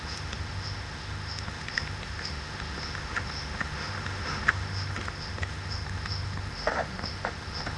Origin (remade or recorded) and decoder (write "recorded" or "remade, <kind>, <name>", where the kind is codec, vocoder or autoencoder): remade, autoencoder, DAC-VAE